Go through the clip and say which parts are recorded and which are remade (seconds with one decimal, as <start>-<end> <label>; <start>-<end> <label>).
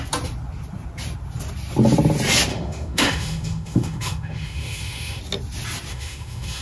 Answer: 0.0-2.5 recorded; 2.5-5.2 remade; 5.2-5.9 recorded; 5.9-6.6 remade